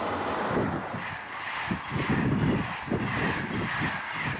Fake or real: real